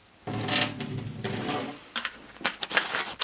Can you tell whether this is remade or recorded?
recorded